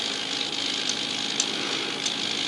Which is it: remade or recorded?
recorded